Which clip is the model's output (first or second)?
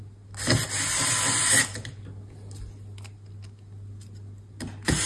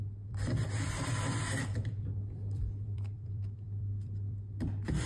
second